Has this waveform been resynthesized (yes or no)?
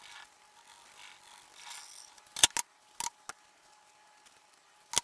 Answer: no